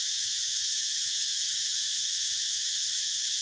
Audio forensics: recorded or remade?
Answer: remade